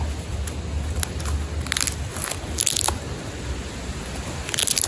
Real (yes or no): yes